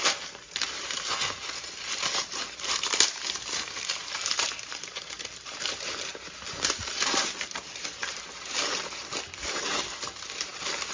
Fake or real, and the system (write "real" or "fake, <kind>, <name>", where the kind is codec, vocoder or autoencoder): fake, vocoder, BigVGAN v2